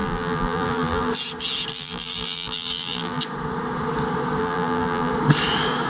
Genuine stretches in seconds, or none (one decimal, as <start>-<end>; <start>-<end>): 1.1-1.7; 3.2-4.4; 5.1-5.9